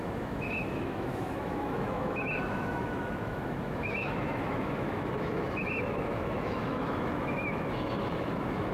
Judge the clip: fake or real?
fake